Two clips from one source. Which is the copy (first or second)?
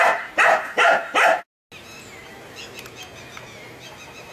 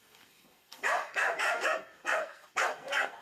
second